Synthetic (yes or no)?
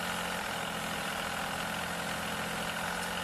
no